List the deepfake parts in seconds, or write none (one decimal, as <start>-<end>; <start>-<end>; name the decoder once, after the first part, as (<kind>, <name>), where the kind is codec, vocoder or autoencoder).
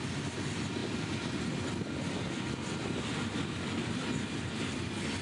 none